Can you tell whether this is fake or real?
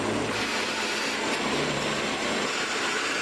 fake